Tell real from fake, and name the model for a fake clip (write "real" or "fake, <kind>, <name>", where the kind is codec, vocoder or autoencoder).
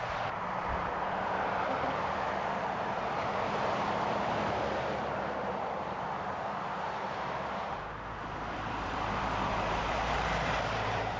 fake, vocoder, BigVGAN v2